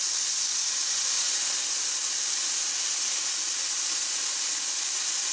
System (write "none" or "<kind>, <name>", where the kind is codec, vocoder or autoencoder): none